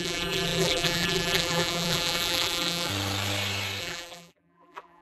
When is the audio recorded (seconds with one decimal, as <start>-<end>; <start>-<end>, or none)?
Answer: 2.9-3.8